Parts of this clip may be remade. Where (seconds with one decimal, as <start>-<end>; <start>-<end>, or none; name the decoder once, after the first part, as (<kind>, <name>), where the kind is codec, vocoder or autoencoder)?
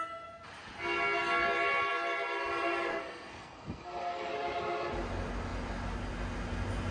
2.9-4.3 (codec, SNAC)